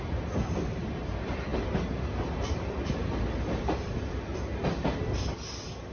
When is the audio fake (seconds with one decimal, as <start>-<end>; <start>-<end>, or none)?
none